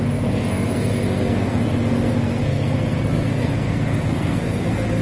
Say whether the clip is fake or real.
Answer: fake